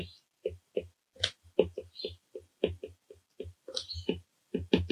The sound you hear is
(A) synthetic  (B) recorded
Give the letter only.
B